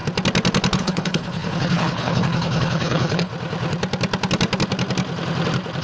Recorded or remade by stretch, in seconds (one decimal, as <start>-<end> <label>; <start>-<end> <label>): 0.0-0.8 recorded; 0.8-3.3 remade; 3.3-5.8 recorded

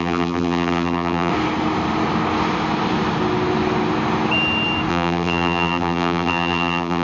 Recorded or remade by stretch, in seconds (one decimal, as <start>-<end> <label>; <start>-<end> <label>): 0.0-1.3 remade; 1.3-4.9 recorded; 4.9-7.0 remade

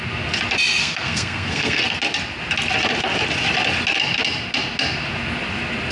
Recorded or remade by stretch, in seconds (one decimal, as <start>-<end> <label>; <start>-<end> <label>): 0.0-0.8 recorded; 0.8-1.8 remade; 1.8-5.9 recorded

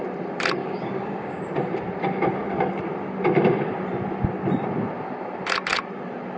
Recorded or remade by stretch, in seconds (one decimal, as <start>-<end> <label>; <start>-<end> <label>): 0.0-0.6 recorded; 0.6-1.4 remade; 1.4-6.4 recorded

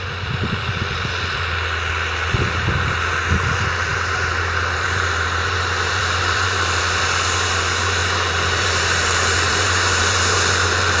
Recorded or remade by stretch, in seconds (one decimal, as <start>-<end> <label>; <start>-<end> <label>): 0.0-3.9 recorded; 3.9-6.8 remade; 6.8-8.0 recorded; 8.0-11.0 remade

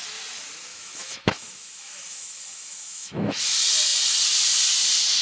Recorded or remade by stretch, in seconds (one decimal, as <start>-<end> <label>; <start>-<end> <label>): 0.0-0.7 recorded; 0.7-3.4 remade; 3.4-5.2 recorded